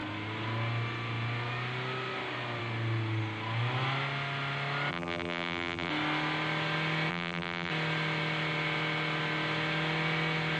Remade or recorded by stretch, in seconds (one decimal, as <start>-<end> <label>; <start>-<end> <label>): 0.0-4.9 recorded; 4.9-5.9 remade; 5.9-7.1 recorded; 7.1-7.7 remade; 7.7-10.6 recorded

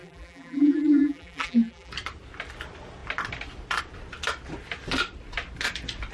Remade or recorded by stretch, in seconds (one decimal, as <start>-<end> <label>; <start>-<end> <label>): 0.0-1.9 remade; 1.9-6.1 recorded

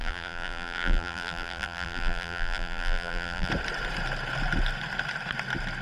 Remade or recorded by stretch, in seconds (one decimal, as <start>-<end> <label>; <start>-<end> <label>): 0.0-3.5 remade; 3.5-5.8 recorded

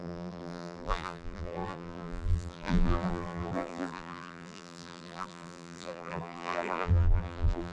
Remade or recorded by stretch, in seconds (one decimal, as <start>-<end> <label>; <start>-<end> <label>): 0.0-7.7 remade

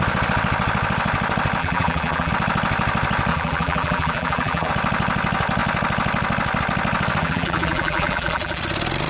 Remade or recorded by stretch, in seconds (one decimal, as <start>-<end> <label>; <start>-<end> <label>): 0.0-1.6 recorded; 1.6-2.3 remade; 2.3-3.3 recorded; 3.3-4.7 remade; 4.7-7.2 recorded; 7.2-8.6 remade; 8.6-9.1 recorded

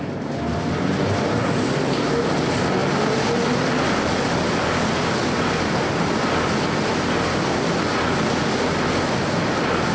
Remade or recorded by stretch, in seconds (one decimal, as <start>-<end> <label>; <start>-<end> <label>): 0.0-9.9 recorded

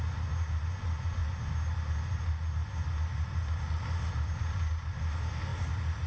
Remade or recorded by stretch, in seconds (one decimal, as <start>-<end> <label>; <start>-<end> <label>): 0.0-6.1 recorded

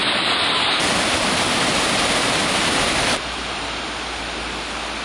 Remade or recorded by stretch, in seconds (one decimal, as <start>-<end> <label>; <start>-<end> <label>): 0.0-2.4 recorded; 2.4-3.8 remade; 3.8-5.0 recorded